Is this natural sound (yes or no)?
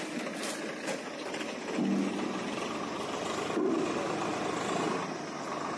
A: yes